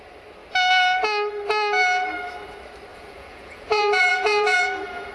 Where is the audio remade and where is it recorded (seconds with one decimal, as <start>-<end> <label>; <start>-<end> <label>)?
0.0-2.9 recorded; 2.9-5.1 remade